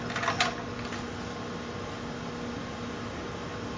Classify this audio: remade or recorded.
recorded